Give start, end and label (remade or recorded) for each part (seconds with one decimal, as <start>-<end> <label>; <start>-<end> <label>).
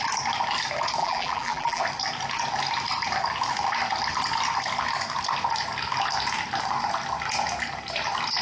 0.0-1.0 recorded; 1.0-1.8 remade; 1.8-8.4 recorded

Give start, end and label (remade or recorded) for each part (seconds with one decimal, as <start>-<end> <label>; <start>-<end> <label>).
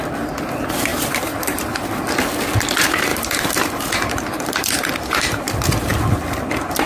0.0-0.9 recorded; 0.9-2.0 remade; 2.0-3.1 recorded; 3.1-5.5 remade; 5.5-6.9 recorded